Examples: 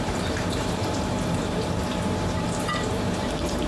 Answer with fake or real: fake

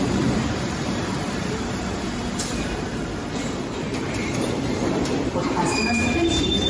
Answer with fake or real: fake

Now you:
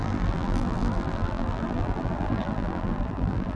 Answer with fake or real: fake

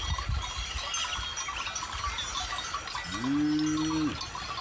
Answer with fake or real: real